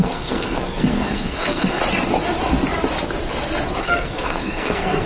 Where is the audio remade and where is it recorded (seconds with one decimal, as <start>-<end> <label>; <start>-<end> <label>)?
0.0-1.8 remade; 1.8-3.8 recorded; 3.8-5.1 remade